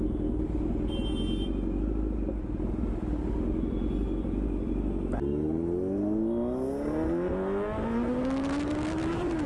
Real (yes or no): yes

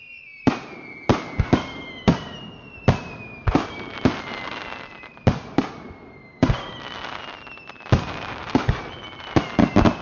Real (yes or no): yes